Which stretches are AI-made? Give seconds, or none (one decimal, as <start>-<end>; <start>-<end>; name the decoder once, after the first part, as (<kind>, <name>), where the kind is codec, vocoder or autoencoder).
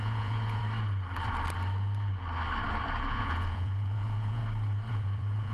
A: 0.0-0.6 (vocoder, Vocos); 3.1-4.4; 4.9-5.5